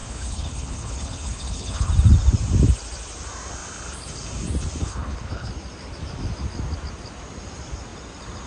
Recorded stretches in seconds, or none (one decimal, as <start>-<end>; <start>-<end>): 1.9-4.8; 5.5-8.5